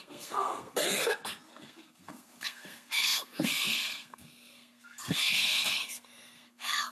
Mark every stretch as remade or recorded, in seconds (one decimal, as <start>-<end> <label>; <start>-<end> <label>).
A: 0.0-6.9 remade